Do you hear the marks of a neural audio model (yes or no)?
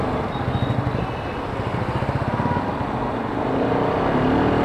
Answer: no